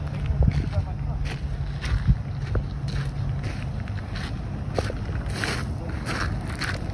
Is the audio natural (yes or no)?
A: yes